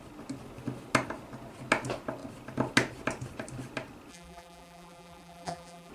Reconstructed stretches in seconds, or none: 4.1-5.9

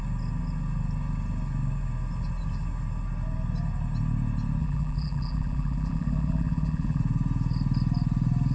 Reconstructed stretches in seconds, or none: 4.6-7.0

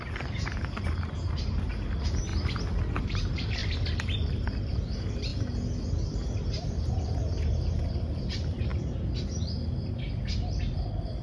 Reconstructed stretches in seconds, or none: 0.0-2.3; 3.0-3.6; 4.3-5.3; 6.9-8.7; 10.6-11.2

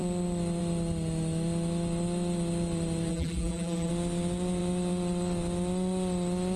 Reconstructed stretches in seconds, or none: 3.1-3.9

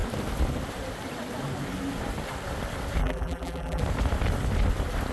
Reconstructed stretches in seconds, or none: 3.0-3.8

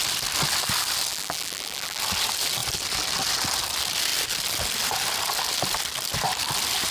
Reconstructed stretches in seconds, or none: 1.1-2.0

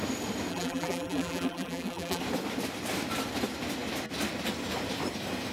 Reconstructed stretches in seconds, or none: 0.5-2.2

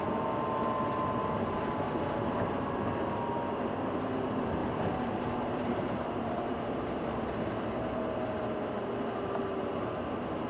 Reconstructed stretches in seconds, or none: 4.6-7.2